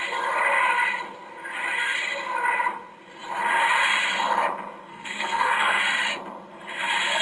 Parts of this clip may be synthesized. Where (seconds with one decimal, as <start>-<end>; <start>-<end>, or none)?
4.9-5.8